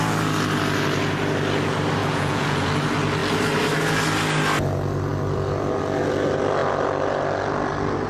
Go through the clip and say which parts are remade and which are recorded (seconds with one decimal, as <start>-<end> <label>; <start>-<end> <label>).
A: 0.0-2.0 recorded; 2.0-2.7 remade; 2.7-8.1 recorded